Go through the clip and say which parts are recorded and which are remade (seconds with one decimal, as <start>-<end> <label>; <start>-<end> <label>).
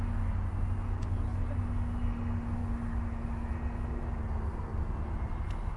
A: 0.0-2.6 recorded; 2.6-3.5 remade; 3.5-5.8 recorded